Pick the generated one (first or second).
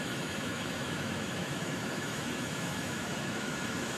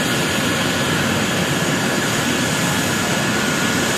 first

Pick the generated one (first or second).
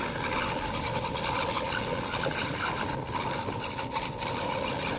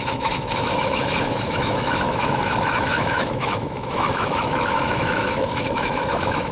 second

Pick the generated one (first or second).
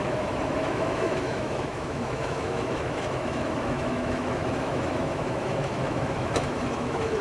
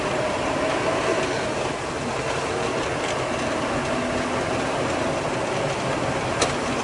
first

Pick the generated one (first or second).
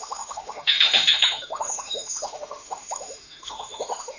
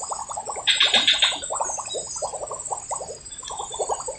first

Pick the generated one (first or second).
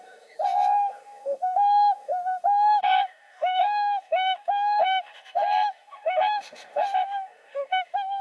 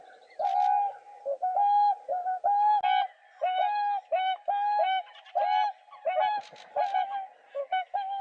first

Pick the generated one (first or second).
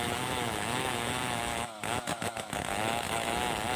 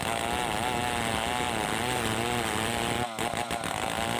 first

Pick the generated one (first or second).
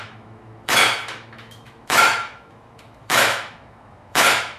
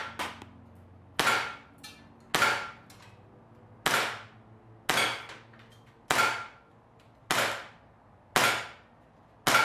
first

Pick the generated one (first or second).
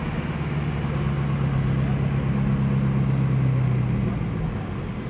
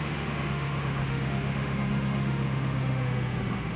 second